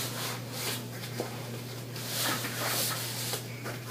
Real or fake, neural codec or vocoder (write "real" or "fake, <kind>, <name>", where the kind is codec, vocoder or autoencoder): real